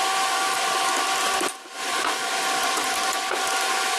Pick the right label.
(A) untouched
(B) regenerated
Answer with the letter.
A